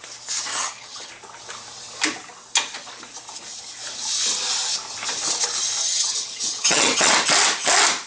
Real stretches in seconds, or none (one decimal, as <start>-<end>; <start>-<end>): 0.0-0.5; 1.1-5.8; 7.1-8.1